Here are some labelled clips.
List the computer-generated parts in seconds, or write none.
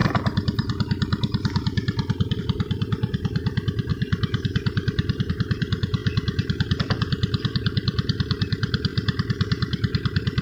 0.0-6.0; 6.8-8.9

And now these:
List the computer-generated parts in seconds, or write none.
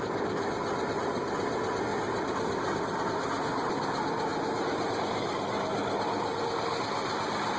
none